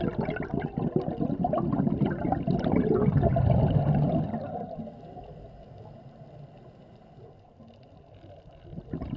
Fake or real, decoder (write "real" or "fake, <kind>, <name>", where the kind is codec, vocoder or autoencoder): real